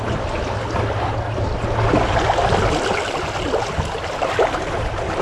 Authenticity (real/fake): real